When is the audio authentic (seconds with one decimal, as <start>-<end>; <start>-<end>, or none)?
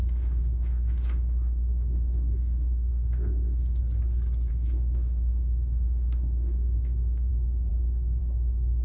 3.8-4.5; 7.3-8.8